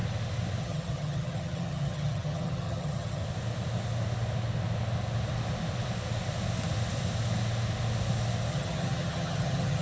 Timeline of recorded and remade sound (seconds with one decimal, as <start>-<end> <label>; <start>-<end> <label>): 0.0-0.6 recorded; 0.6-3.2 remade; 3.2-8.5 recorded; 8.5-9.8 remade